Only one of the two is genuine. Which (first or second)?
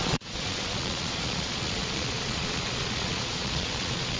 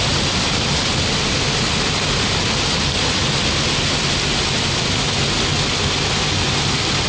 second